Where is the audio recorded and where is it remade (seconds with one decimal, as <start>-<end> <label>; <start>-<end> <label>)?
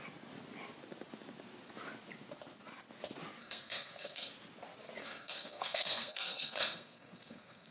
0.0-3.4 recorded; 3.4-4.3 remade; 4.3-5.0 recorded; 5.0-7.7 remade